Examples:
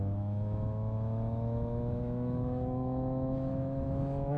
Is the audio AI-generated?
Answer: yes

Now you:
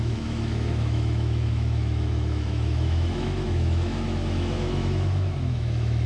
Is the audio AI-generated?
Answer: yes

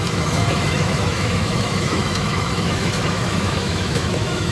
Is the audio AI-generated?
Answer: yes